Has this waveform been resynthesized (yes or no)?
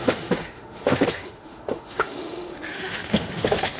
yes